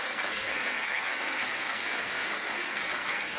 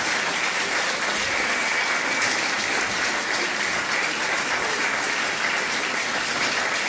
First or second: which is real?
second